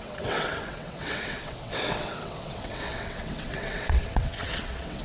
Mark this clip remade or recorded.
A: remade